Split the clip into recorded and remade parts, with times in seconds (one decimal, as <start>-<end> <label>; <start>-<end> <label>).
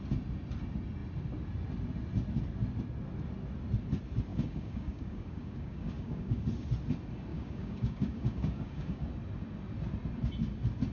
0.0-4.3 recorded; 4.3-6.4 remade; 6.4-7.3 recorded; 7.3-9.1 remade; 9.1-10.9 recorded